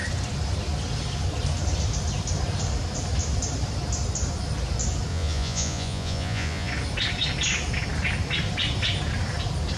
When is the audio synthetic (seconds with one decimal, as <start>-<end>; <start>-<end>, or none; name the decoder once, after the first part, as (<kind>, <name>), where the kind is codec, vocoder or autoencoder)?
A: 5.1-6.7 (vocoder, Vocos)